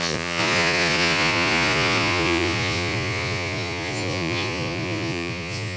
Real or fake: fake